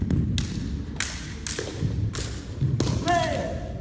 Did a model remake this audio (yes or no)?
no